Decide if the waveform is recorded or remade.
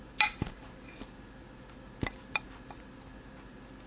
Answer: recorded